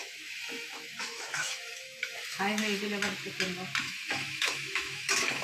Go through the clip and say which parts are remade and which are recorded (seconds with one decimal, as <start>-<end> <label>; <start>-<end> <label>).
0.0-2.8 remade; 2.8-3.8 recorded; 3.8-5.4 remade